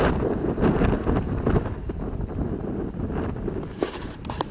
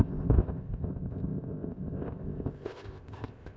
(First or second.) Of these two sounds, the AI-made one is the second